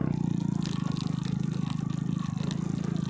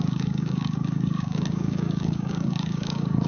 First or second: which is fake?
second